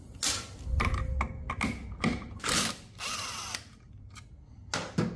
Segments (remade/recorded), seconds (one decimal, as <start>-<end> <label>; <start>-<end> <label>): 0.0-5.2 recorded